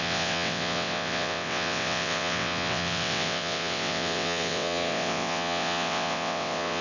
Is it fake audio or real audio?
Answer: fake